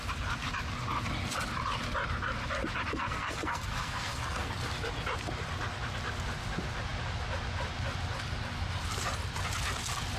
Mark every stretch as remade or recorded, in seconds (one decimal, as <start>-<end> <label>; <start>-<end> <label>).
0.0-2.9 recorded; 2.9-4.5 remade; 4.5-10.2 recorded